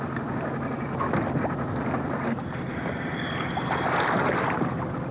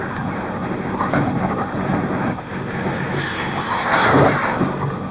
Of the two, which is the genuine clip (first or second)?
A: first